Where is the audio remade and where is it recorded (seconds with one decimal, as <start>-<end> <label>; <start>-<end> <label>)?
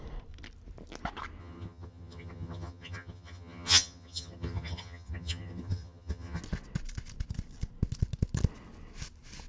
0.0-1.4 recorded; 1.4-6.4 remade; 6.4-9.5 recorded